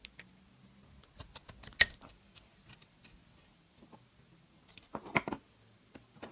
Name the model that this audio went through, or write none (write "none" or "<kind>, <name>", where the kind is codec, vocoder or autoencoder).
none